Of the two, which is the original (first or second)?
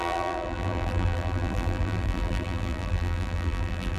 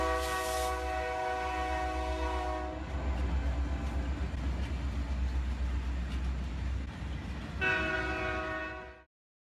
second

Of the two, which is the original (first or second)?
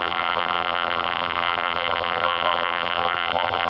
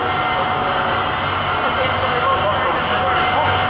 second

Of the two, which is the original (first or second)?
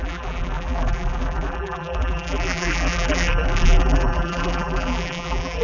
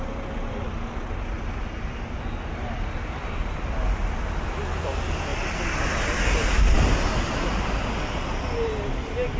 second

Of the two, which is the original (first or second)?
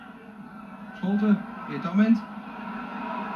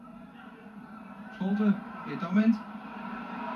first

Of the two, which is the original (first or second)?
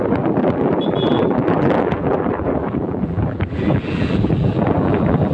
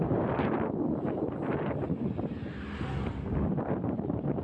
second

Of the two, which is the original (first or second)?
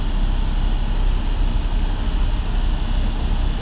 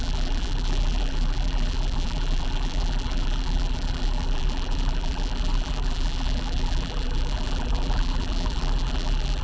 first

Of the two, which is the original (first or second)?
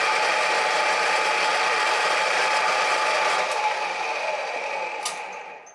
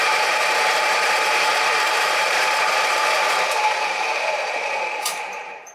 first